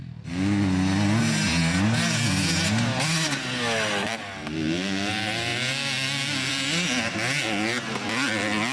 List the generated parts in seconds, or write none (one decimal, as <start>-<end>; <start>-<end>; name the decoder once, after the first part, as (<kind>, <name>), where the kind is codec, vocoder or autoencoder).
none